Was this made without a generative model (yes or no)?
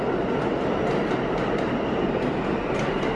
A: yes